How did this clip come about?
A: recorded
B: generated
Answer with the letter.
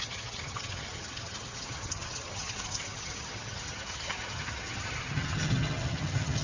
B